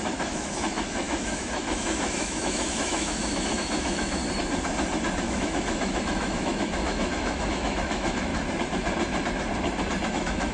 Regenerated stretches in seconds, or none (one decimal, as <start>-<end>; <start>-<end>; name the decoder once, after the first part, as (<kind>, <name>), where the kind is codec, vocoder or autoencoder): 0.0-4.2 (autoencoder, DAC-VAE); 5.2-8.3; 10.1-10.5